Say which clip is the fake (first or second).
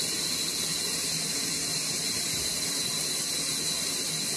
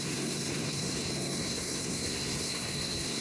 second